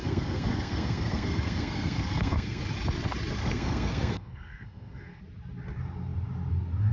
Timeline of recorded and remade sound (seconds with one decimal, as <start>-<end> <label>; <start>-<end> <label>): 0.0-2.6 remade; 2.6-3.4 recorded; 3.4-5.2 remade; 5.2-6.9 recorded